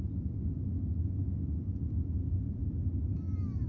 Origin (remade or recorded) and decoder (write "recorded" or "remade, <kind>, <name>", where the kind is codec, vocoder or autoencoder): recorded